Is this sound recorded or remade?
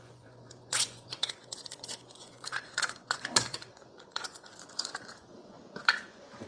remade